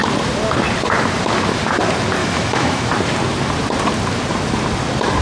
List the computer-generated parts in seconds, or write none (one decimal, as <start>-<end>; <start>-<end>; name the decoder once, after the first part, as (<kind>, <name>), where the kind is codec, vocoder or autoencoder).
2.2-2.9 (autoencoder, DAC-VAE)